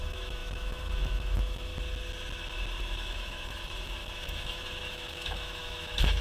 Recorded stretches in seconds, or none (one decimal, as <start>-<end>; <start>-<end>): 1.7-2.8